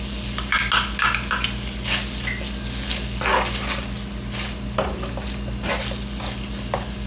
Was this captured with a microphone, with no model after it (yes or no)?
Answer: yes